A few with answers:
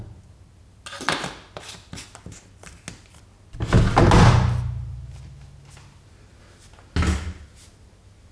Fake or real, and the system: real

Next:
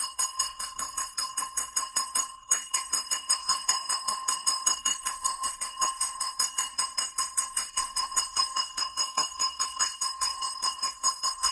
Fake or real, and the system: fake, codec, SNAC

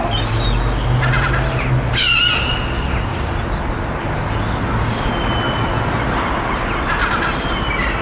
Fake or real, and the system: real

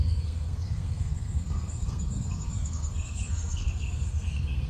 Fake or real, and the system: fake, codec, SNAC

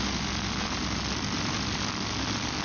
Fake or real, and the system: real